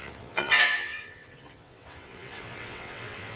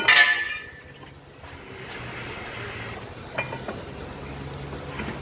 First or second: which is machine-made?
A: first